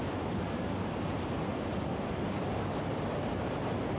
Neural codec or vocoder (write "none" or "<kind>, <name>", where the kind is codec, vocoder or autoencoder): none